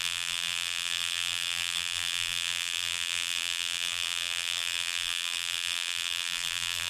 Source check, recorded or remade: remade